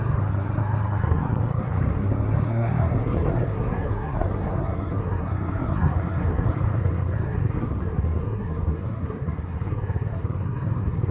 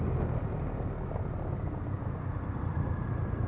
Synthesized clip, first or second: first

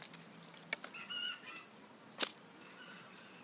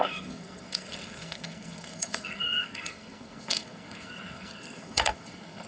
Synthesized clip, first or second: second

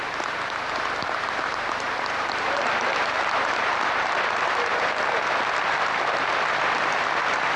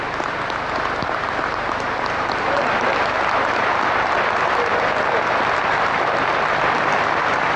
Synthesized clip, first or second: first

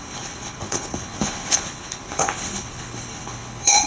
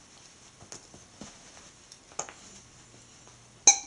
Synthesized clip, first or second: first